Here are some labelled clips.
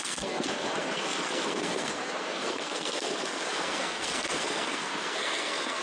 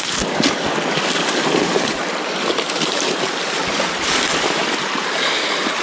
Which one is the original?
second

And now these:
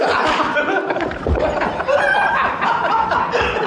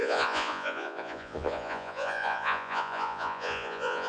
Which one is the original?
first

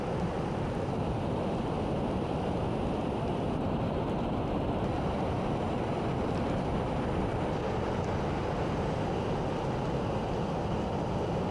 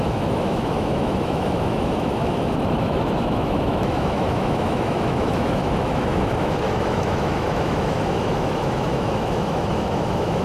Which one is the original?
first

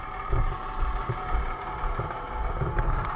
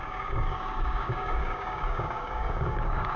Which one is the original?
first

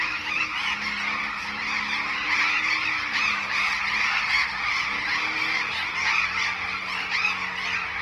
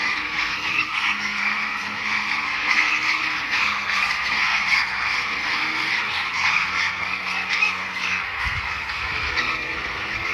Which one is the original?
first